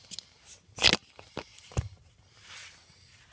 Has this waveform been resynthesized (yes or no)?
no